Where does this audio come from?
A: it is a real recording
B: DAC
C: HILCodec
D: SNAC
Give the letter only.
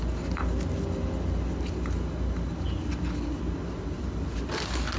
A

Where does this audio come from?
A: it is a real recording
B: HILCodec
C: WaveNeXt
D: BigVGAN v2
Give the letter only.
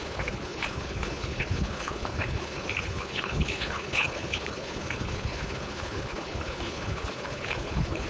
B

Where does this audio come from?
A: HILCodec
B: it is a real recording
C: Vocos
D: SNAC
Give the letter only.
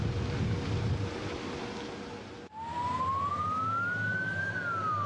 B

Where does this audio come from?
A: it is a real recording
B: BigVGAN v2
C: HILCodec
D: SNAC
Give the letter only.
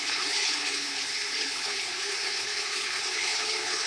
C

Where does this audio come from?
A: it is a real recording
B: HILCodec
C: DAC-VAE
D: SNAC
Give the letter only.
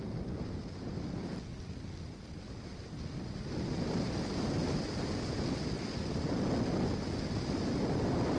A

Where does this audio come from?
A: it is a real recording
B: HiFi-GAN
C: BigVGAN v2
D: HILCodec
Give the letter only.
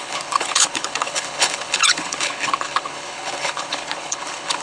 D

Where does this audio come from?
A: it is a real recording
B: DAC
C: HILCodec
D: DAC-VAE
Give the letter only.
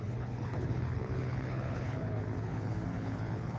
C